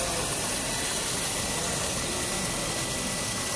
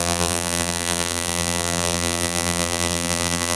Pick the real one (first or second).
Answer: first